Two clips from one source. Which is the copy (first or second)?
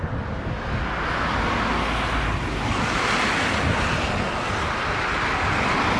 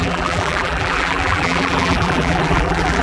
second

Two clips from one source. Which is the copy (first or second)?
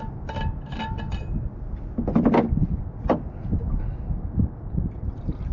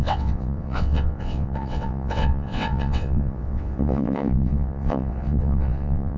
second